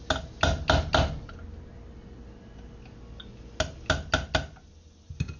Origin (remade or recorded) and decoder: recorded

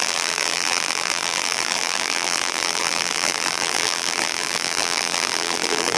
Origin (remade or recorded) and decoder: remade, vocoder, BigVGAN v2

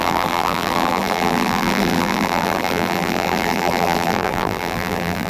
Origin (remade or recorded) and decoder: remade, vocoder, BigVGAN v2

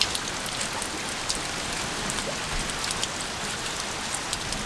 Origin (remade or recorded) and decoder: recorded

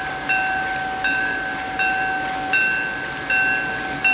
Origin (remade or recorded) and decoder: recorded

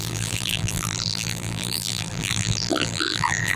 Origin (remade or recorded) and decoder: remade, vocoder, BigVGAN v2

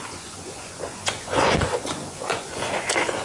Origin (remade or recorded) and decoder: remade, vocoder, Vocos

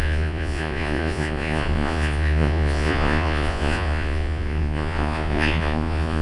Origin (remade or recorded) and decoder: remade, vocoder, Vocos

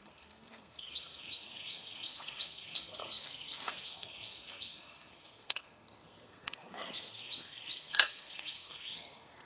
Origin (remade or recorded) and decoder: remade, codec, SNAC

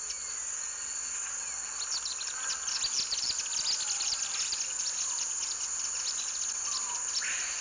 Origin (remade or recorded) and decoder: recorded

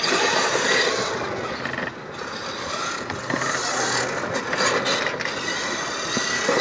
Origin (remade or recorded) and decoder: recorded